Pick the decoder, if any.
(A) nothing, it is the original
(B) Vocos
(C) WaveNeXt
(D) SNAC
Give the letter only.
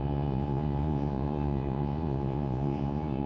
B